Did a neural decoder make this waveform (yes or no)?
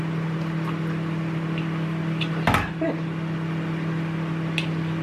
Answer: no